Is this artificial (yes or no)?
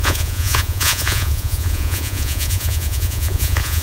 yes